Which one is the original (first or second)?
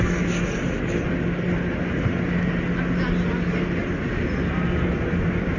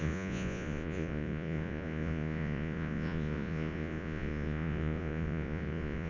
first